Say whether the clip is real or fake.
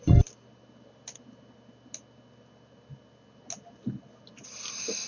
real